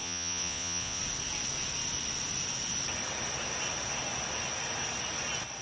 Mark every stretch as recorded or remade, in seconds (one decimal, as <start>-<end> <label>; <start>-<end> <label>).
0.0-1.0 remade; 1.0-5.6 recorded